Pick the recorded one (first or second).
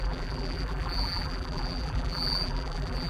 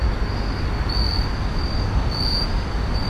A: second